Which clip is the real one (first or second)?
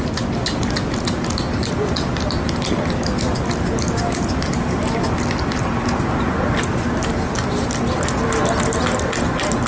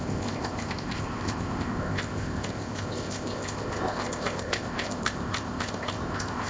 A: first